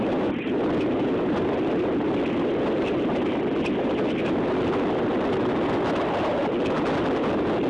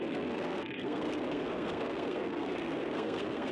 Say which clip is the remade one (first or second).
second